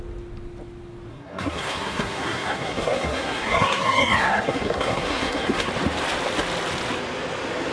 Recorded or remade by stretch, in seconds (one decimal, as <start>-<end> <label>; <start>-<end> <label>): 0.0-1.1 recorded; 1.1-5.7 remade; 5.7-7.7 recorded